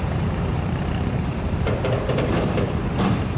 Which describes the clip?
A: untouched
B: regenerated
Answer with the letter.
B